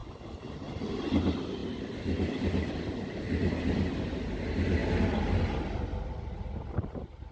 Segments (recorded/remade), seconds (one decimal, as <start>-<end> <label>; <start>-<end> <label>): 0.0-7.3 recorded

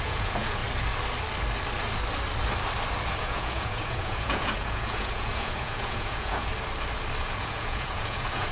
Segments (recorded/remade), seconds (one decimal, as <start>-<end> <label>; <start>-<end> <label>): 0.0-0.6 remade; 0.6-3.2 recorded; 3.2-6.5 remade; 6.5-7.2 recorded; 7.2-8.5 remade

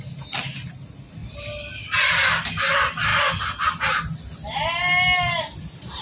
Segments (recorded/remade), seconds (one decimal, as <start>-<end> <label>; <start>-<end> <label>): 0.0-6.0 recorded

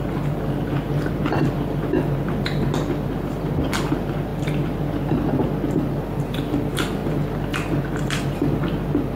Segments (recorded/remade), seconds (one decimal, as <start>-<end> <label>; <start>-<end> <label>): 0.0-4.3 remade; 4.3-6.0 recorded; 6.0-7.0 remade; 7.0-7.8 recorded; 7.8-9.2 remade

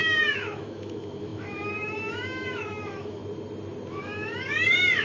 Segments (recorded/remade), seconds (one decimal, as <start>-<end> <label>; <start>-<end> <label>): 0.0-3.2 remade; 3.2-3.9 recorded; 3.9-5.0 remade

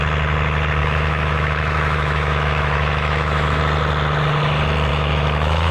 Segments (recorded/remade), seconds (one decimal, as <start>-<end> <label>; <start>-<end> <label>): 0.0-0.8 recorded; 0.8-3.6 remade; 3.6-4.9 recorded; 4.9-5.7 remade